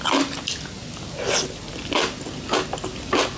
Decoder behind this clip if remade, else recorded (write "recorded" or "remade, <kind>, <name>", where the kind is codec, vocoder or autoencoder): recorded